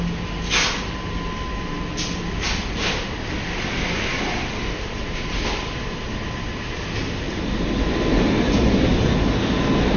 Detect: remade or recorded recorded